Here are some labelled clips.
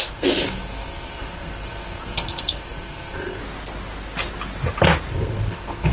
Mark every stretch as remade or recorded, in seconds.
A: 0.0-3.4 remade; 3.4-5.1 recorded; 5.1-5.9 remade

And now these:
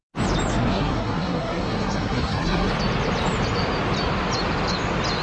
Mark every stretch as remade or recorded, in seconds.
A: 0.0-0.5 recorded; 0.5-2.7 remade; 2.7-5.2 recorded

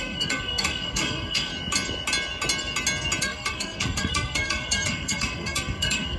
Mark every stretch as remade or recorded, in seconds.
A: 0.0-1.5 remade; 1.5-3.2 recorded; 3.2-6.2 remade